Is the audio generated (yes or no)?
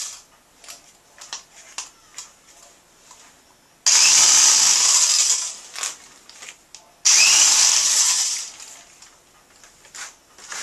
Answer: no